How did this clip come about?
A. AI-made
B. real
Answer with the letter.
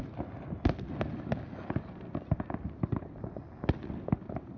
B